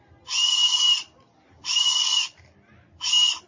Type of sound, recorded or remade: recorded